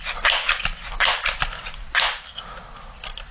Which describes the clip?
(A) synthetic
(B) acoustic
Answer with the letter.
B